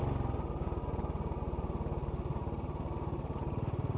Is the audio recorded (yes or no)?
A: yes